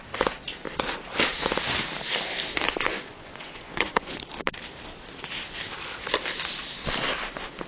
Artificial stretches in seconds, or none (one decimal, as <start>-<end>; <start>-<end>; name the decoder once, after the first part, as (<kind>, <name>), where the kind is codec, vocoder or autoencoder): 2.5-4.2 (vocoder, Vocos)